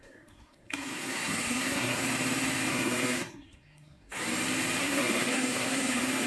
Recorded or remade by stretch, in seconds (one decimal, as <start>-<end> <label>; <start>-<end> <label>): 0.0-2.0 remade; 2.0-2.7 recorded; 2.7-4.2 remade; 4.2-4.8 recorded; 4.8-6.3 remade